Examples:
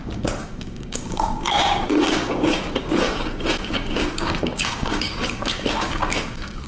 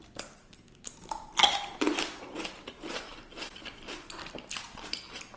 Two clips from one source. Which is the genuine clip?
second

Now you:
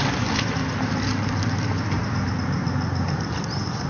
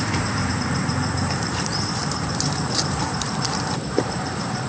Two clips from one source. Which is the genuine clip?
first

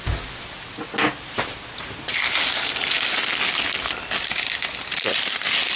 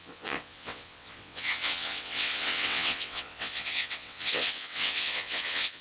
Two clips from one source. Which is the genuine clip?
first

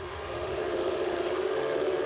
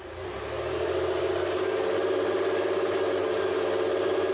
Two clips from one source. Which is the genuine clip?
second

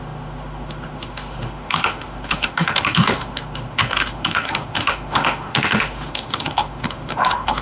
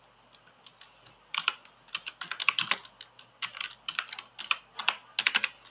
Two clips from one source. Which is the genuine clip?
second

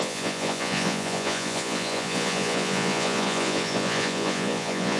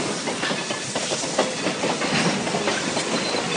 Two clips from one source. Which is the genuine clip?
second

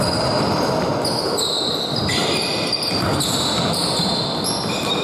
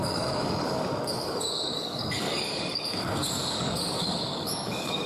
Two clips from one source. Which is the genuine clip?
first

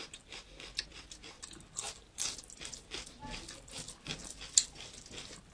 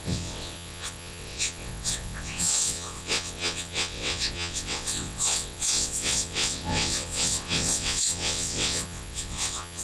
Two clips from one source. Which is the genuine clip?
first